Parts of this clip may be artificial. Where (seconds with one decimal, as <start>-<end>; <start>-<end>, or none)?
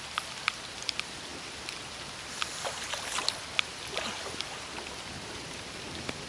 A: none